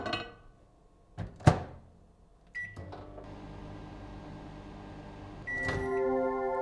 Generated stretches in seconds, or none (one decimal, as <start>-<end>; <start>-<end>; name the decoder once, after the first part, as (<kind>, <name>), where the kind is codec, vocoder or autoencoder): none